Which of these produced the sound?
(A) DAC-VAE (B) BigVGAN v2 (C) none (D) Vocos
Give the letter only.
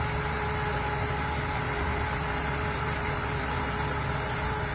C